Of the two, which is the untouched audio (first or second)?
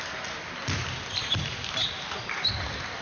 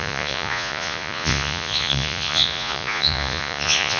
first